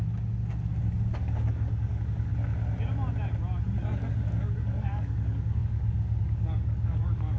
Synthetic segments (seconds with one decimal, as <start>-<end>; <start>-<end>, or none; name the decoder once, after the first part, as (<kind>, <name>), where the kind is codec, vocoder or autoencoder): 0.8-2.3 (codec, DAC); 3.8-7.4